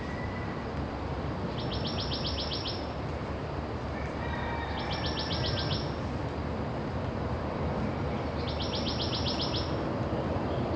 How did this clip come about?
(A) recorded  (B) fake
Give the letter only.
A